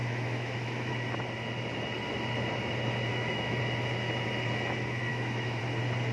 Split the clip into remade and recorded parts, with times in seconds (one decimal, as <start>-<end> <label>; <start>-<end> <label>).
0.0-0.9 remade; 0.9-3.1 recorded; 3.1-3.6 remade; 3.6-5.1 recorded; 5.1-5.6 remade; 5.6-6.1 recorded